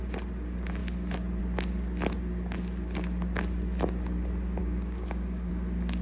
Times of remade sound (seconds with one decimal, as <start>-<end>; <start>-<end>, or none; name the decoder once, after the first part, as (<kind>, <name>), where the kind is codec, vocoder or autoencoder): 4.6-5.5 (codec, DAC)